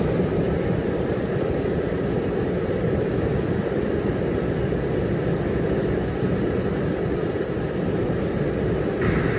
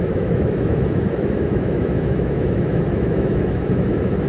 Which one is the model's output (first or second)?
second